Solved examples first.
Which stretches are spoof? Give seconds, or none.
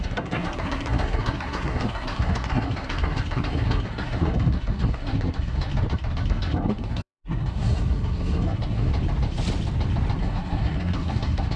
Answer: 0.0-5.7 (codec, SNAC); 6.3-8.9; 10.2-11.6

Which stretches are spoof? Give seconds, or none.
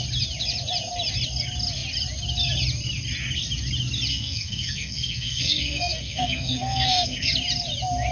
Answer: 4.1-7.3 (codec, SNAC)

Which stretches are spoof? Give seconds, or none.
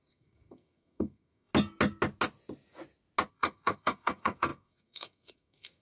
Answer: 0.0-1.5 (codec, SNAC); 3.3-5.8